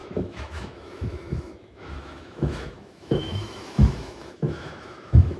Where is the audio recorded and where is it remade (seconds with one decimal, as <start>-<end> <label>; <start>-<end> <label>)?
0.0-5.4 remade